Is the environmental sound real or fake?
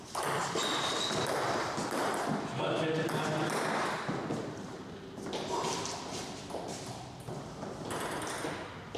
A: real